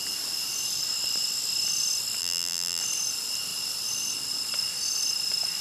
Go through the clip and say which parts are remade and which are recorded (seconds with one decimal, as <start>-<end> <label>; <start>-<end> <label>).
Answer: 0.0-2.2 recorded; 2.2-2.8 remade; 2.8-5.6 recorded